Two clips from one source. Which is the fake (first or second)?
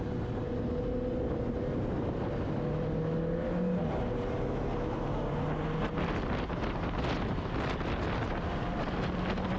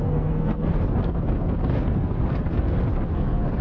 second